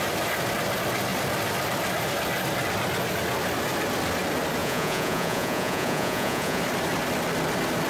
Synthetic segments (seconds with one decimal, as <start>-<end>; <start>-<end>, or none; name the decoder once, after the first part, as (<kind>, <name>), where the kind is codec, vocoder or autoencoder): 4.6-6.6 (vocoder, Vocos)